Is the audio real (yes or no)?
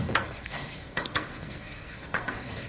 no